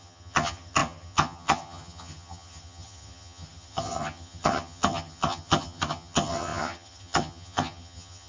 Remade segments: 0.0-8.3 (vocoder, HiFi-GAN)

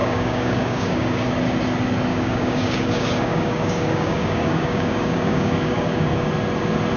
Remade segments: 0.0-1.3 (codec, DAC); 2.1-6.3

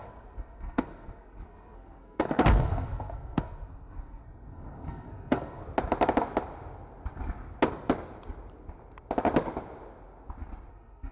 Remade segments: 0.0-5.6 (codec, SNAC); 10.7-11.1

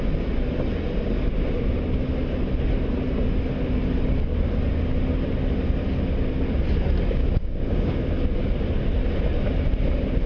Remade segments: 7.2-8.0 (codec, DAC)

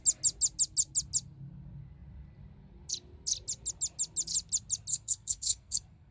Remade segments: 4.9-6.1 (codec, SNAC)

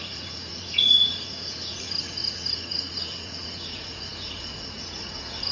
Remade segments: 0.0-5.5 (vocoder, Vocos)